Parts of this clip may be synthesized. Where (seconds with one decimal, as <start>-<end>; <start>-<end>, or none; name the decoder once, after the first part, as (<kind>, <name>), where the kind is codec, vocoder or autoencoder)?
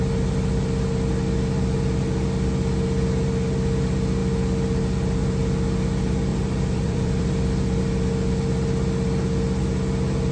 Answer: 6.3-7.8 (vocoder, BigVGAN v2)